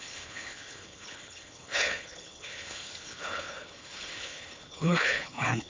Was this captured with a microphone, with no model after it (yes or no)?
no